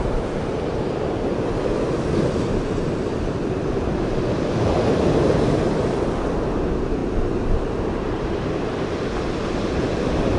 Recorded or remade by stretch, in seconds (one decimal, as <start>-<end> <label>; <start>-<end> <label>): 0.0-7.0 recorded; 7.0-8.8 remade; 8.8-10.4 recorded